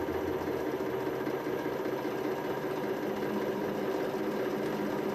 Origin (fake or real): real